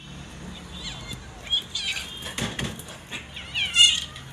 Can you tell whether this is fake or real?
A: real